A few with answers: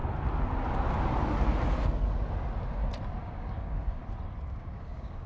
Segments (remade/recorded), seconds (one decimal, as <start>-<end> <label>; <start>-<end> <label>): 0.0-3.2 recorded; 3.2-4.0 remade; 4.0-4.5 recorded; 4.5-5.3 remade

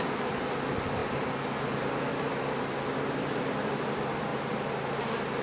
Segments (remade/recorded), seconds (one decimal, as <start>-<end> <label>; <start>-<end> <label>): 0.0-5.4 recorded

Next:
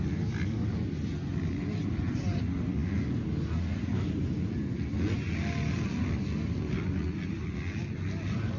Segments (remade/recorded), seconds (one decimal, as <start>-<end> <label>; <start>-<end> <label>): 0.0-8.6 recorded